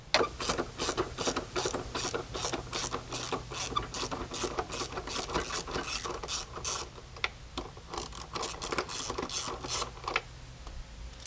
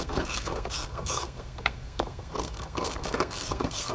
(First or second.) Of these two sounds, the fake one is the second